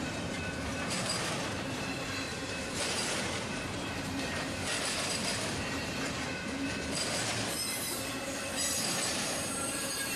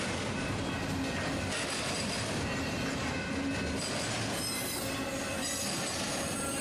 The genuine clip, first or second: second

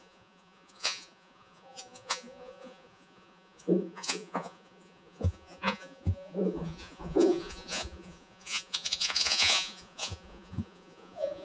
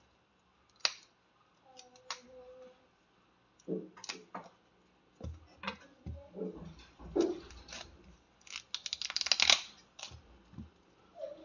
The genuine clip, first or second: second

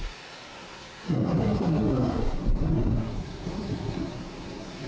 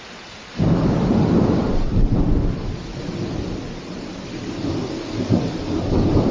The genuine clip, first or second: second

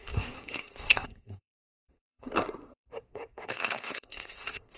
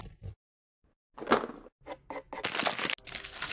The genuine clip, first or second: second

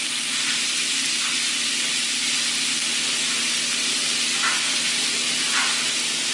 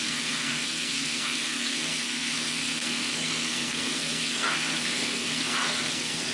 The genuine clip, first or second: first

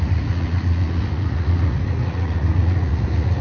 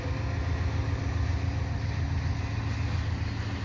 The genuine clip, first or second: second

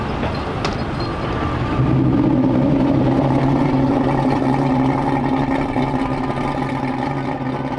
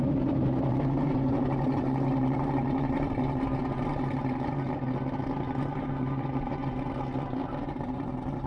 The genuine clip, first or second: first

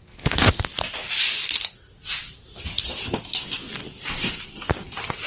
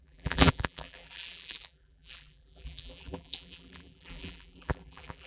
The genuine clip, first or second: first